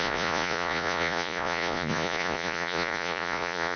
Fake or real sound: fake